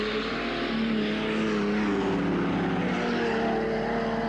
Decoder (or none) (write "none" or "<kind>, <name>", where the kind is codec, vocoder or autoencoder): none